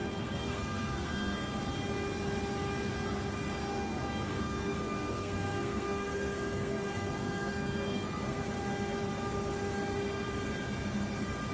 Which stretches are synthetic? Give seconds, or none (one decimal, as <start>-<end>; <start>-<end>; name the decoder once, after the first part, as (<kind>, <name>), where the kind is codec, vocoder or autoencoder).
0.0-1.6 (codec, SNAC); 3.7-8.5